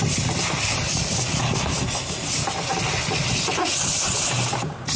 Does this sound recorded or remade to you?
recorded